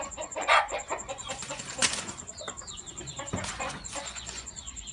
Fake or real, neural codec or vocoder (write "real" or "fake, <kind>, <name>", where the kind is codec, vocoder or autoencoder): fake, vocoder, Vocos